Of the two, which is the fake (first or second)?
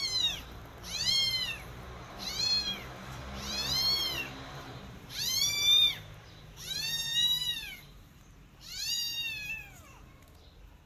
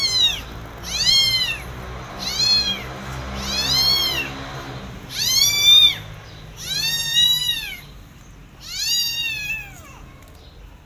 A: first